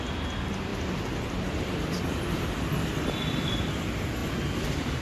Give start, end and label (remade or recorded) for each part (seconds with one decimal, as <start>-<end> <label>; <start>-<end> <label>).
0.0-0.7 recorded; 0.7-3.7 remade; 3.7-5.0 recorded